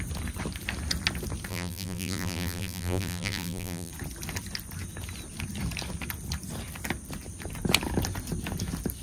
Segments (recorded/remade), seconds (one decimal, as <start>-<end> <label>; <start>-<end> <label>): 0.0-1.5 recorded; 1.5-3.9 remade; 3.9-9.0 recorded